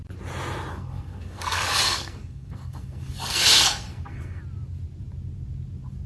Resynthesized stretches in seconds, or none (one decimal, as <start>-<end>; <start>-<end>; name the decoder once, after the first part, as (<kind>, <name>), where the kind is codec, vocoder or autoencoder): 0.7-4.4 (codec, SNAC)